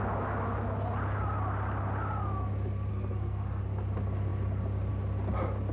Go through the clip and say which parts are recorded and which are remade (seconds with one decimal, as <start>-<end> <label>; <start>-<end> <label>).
0.0-2.9 recorded; 2.9-3.6 remade; 3.6-5.7 recorded